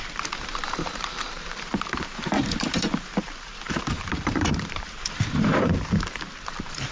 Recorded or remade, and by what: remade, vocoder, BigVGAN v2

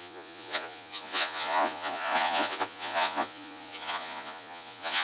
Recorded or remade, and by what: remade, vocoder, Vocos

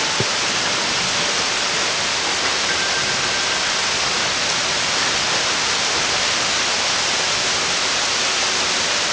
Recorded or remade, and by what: recorded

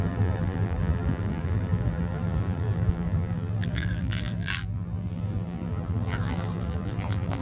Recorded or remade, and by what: remade, vocoder, BigVGAN v2